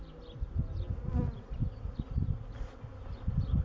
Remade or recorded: recorded